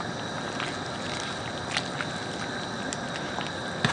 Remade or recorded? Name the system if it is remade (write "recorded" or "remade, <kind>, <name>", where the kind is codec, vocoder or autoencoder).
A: recorded